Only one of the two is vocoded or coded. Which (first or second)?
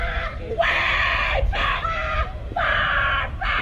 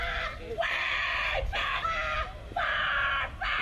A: first